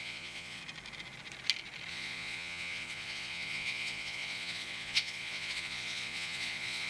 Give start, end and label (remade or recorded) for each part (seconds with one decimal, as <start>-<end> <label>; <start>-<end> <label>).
0.0-0.6 remade; 0.6-1.9 recorded; 1.9-6.9 remade